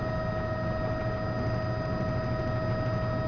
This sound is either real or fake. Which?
real